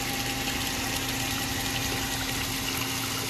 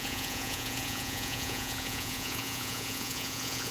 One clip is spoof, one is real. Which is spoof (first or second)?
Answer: second